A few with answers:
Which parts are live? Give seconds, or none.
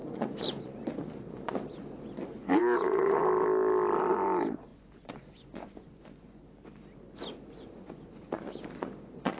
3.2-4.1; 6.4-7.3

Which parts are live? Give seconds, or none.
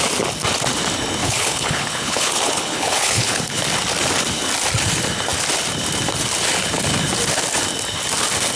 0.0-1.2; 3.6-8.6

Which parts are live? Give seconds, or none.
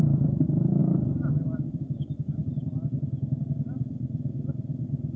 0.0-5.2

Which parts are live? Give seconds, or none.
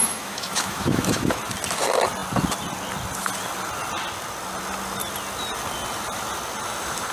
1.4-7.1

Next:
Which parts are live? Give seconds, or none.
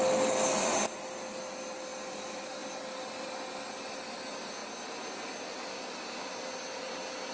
0.0-7.3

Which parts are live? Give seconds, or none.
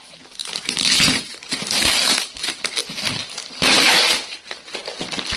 0.0-0.4; 1.6-5.4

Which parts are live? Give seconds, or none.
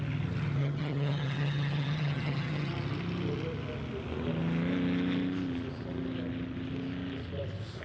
0.0-0.6; 2.7-7.8